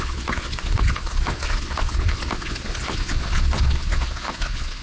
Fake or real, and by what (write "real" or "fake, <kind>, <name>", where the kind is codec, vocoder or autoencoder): fake, vocoder, Vocos